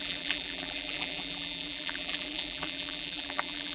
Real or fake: fake